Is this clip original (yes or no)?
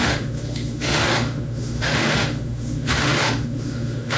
no